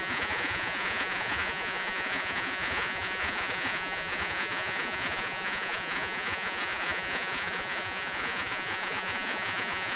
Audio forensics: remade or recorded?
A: remade